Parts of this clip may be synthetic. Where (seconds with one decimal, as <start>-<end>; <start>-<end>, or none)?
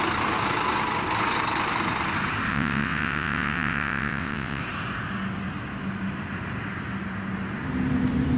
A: 2.5-4.6